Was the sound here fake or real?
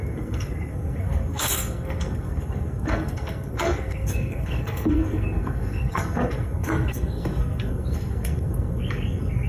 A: fake